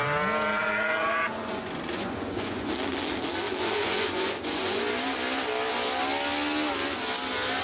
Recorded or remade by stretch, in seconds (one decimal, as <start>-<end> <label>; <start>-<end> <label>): 0.0-0.5 recorded; 0.5-2.7 remade; 2.7-3.6 recorded; 3.6-4.8 remade; 4.8-7.6 recorded

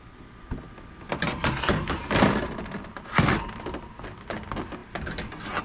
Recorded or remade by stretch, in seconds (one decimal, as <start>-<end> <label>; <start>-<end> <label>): 0.0-5.6 recorded

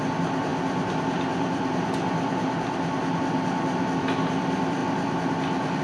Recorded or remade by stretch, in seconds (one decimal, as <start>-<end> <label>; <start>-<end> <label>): 0.0-5.8 recorded

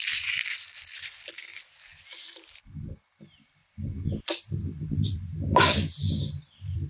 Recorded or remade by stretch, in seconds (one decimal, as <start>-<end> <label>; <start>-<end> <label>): 0.0-1.5 remade; 1.5-3.2 recorded; 3.2-3.6 remade; 3.6-6.3 recorded; 6.3-6.9 remade

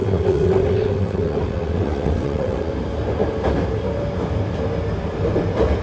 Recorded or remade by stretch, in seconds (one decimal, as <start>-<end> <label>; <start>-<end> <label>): 0.0-2.7 remade; 2.7-5.8 recorded

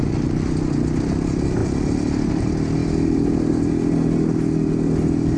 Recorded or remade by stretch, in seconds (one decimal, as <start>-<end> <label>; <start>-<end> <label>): 0.0-5.4 recorded